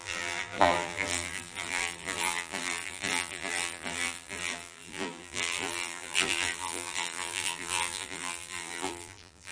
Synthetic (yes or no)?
yes